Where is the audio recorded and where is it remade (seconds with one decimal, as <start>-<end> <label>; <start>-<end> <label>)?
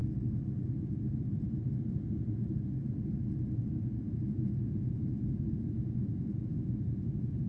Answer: 0.0-3.7 recorded; 3.7-7.5 remade